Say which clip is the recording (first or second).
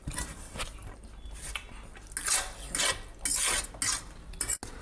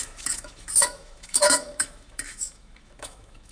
first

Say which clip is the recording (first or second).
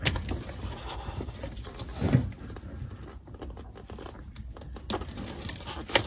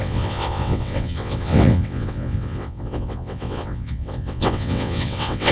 first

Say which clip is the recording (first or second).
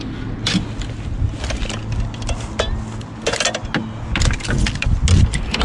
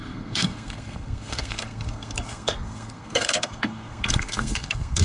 first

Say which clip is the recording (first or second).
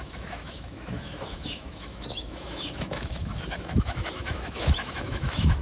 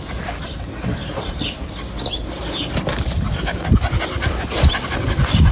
second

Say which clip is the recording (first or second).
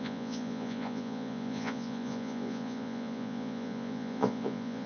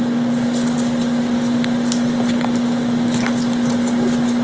second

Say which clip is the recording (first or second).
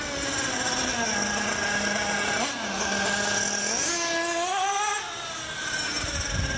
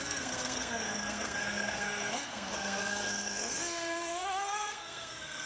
first